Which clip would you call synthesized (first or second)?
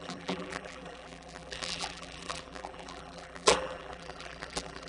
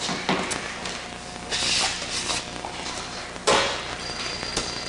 first